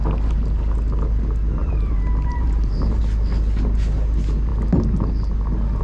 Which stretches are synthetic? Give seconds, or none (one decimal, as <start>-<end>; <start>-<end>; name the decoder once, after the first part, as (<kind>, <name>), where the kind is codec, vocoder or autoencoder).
1.6-3.0 (vocoder, BigVGAN v2)

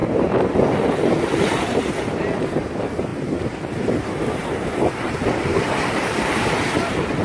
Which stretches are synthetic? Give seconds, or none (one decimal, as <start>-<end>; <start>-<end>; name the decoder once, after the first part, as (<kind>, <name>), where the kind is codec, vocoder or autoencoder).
0.0-7.2 (vocoder, BigVGAN v2)

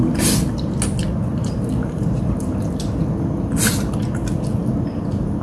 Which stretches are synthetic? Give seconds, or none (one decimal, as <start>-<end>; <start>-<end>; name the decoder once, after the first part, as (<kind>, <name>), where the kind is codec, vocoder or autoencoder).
1.3-2.6 (vocoder, BigVGAN v2)

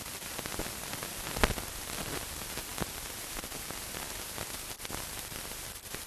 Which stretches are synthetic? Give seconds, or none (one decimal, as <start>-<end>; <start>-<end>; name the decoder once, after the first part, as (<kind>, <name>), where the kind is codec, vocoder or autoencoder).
0.0-0.5 (vocoder, BigVGAN v2); 1.7-6.1

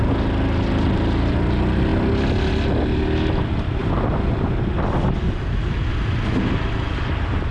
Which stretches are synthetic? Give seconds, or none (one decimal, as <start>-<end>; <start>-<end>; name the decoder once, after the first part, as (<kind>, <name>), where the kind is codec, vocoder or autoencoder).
none

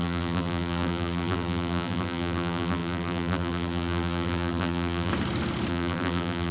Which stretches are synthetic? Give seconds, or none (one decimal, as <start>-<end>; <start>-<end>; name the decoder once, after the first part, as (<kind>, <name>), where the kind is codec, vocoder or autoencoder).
0.0-5.1 (vocoder, BigVGAN v2); 5.7-6.5

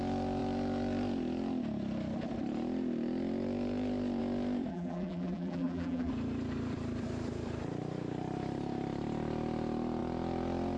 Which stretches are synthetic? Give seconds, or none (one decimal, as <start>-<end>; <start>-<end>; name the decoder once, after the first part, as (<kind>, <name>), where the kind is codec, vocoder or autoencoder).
4.7-6.1 (vocoder, BigVGAN v2)